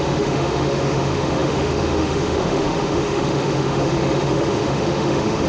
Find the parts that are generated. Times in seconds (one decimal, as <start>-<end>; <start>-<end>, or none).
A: 0.0-5.5

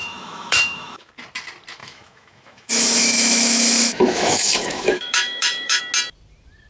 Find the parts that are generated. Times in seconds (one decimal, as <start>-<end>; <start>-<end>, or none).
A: 0.0-1.1; 1.8-5.8

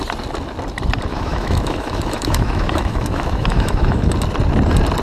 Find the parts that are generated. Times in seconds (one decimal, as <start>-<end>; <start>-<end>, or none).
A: 1.1-4.1

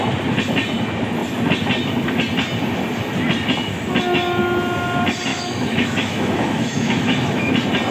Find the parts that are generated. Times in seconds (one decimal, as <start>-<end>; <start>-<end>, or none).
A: 5.3-7.5

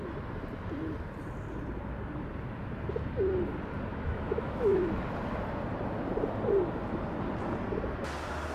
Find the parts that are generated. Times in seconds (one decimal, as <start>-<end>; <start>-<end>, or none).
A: 3.9-4.9

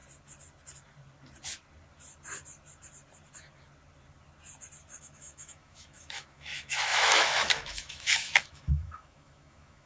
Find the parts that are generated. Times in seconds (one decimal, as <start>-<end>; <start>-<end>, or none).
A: 5.0-9.9

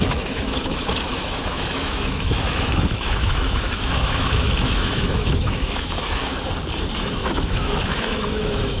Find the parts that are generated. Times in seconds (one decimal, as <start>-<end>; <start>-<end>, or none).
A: 0.0-6.3; 7.0-8.8